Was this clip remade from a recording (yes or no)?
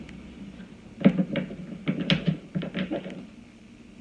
no